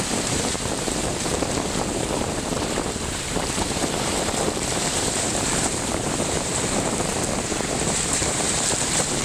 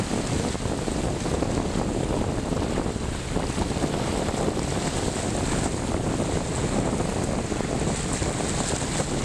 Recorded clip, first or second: second